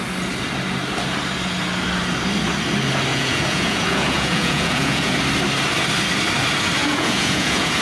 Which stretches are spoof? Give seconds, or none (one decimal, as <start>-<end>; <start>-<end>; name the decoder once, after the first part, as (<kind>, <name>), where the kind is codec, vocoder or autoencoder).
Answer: 3.1-5.1 (vocoder, Vocos); 6.8-7.8